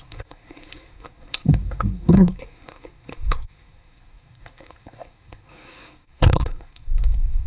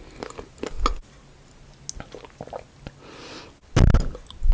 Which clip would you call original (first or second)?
second